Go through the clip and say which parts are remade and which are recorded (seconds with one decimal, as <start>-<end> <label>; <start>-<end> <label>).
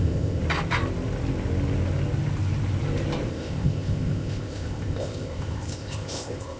0.0-0.4 remade; 0.4-3.3 recorded; 3.3-6.6 remade